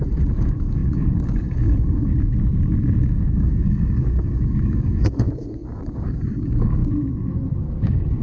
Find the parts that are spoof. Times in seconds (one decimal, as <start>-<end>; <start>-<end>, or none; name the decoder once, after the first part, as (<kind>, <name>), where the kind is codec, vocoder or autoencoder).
0.0-2.1 (codec, DAC); 3.2-6.8; 7.5-8.2